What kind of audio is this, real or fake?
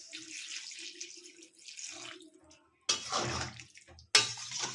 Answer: real